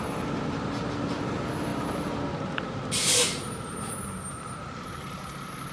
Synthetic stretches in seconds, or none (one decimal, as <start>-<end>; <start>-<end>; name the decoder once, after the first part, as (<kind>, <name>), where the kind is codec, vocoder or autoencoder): 0.0-5.7 (vocoder, BigVGAN v2)